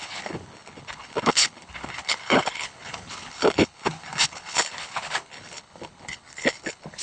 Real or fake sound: fake